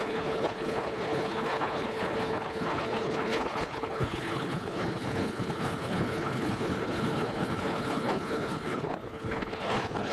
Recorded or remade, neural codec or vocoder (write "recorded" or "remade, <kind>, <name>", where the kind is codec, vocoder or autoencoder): remade, codec, HILCodec